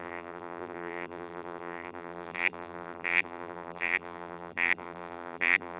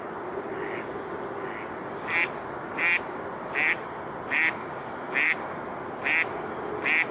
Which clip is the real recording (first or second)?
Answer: second